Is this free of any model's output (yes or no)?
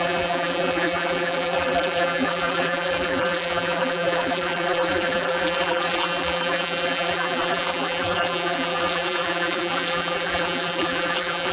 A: no